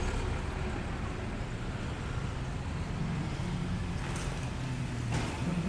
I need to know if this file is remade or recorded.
recorded